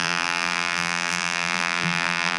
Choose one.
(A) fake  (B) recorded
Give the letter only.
A